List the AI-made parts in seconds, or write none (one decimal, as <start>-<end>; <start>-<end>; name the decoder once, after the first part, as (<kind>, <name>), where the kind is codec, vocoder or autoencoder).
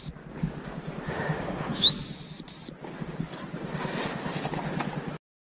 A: 1.1-1.9 (autoencoder, DAC-VAE)